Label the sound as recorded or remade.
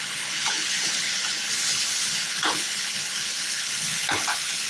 remade